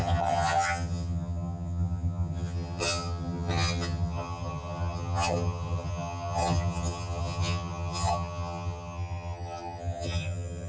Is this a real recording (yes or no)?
no